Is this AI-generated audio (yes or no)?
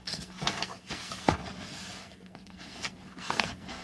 yes